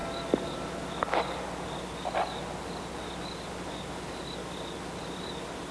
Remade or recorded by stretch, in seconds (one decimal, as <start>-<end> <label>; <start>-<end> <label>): 0.0-5.7 recorded